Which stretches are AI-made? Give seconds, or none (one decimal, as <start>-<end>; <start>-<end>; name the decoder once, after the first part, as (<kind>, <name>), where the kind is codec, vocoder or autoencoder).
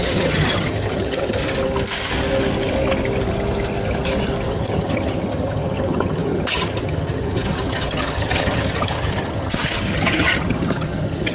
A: 0.0-1.4 (vocoder, HiFi-GAN); 4.5-11.3